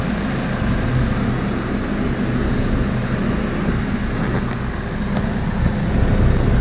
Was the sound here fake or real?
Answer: real